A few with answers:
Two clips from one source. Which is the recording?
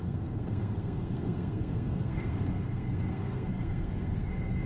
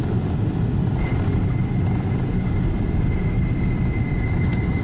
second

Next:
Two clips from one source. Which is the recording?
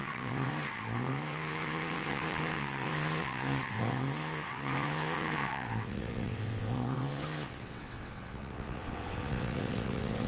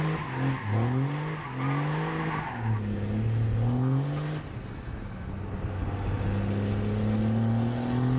second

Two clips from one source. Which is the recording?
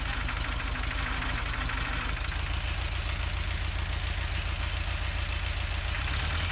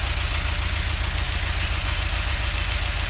first